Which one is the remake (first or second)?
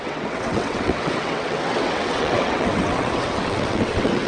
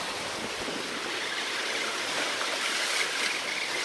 first